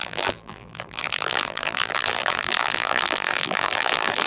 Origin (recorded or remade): remade